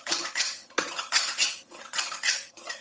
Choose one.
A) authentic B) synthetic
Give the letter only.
B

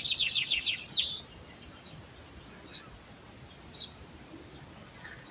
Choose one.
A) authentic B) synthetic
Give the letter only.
A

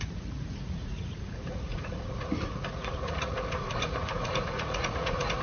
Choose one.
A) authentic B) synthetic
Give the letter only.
B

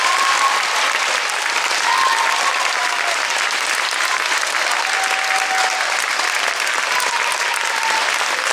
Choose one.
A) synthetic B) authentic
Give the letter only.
B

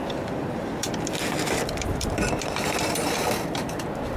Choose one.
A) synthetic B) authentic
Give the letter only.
A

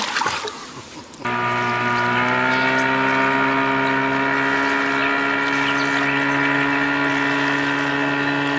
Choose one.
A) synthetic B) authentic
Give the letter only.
B